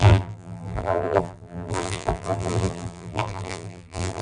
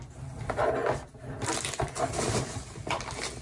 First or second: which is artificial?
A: first